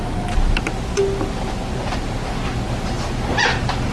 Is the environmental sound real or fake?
real